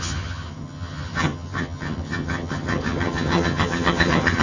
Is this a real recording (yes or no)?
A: no